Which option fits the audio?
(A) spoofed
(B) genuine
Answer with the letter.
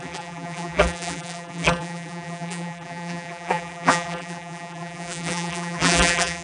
A